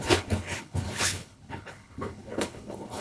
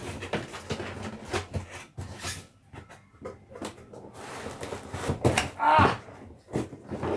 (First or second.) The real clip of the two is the second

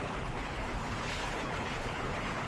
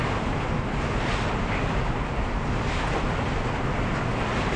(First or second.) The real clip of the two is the second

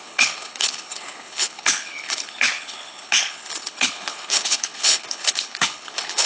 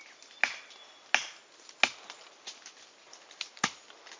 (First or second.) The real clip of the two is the second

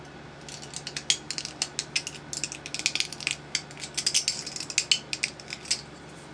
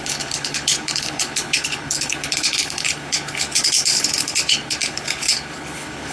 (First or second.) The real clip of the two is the first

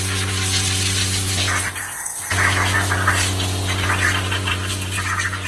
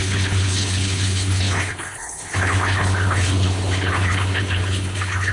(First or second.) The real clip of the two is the first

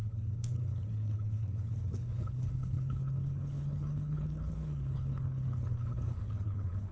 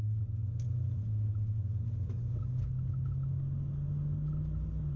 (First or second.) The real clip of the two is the second